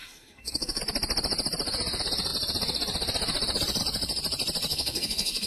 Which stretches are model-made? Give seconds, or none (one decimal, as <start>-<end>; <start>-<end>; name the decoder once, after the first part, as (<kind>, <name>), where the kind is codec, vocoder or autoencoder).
0.0-0.8 (codec, SNAC); 4.7-5.5

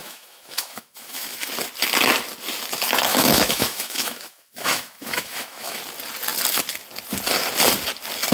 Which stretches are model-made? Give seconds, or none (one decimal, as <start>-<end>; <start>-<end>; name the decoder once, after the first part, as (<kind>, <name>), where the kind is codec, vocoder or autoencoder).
0.0-1.5 (autoencoder, DAC-VAE); 3.1-5.8

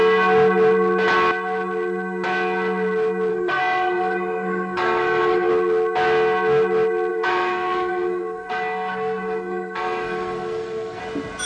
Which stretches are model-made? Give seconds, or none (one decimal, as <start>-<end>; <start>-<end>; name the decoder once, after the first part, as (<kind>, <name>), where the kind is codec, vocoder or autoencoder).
3.3-5.5 (codec, SNAC); 7.1-11.0